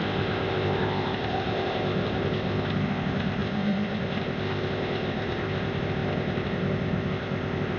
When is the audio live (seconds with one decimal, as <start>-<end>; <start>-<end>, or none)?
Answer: none